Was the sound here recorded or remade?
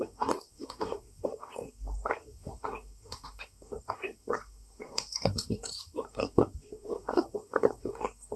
remade